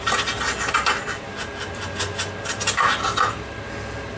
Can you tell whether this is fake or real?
real